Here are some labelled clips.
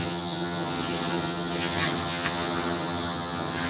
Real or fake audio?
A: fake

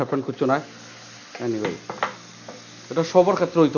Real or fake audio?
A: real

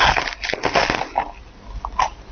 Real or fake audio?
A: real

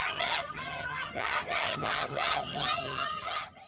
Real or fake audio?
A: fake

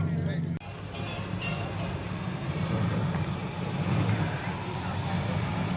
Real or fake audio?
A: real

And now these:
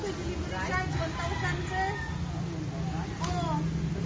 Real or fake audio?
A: real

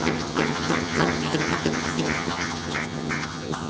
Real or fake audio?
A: fake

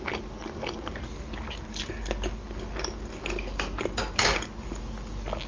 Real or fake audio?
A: real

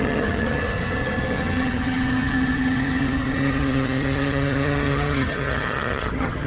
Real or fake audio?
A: fake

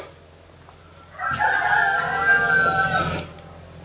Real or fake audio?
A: real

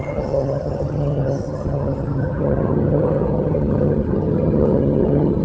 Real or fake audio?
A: fake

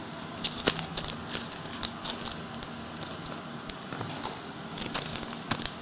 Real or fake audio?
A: real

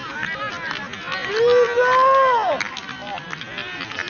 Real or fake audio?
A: real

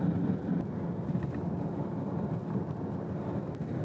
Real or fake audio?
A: real